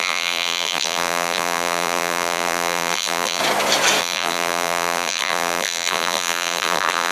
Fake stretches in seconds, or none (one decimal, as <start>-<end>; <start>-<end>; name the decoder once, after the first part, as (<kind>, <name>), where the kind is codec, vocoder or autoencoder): 0.0-3.4 (vocoder, BigVGAN v2); 4.0-7.1